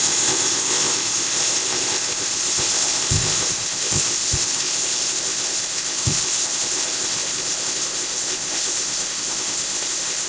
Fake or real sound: fake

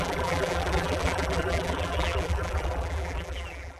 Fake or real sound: fake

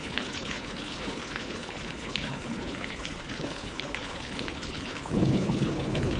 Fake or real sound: fake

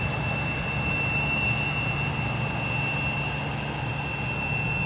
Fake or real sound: real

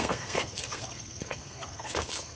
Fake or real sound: fake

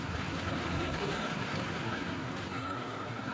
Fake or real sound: fake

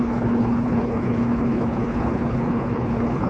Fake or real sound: fake